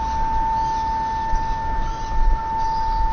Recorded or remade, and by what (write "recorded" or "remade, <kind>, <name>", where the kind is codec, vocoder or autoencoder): recorded